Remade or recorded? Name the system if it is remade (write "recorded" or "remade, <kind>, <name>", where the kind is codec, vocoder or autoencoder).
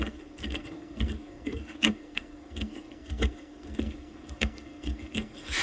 remade, codec, SNAC